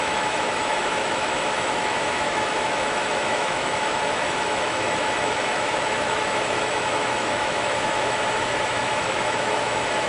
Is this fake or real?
fake